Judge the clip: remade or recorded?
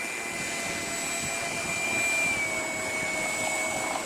recorded